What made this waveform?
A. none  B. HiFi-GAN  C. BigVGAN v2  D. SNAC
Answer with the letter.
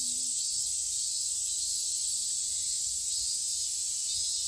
A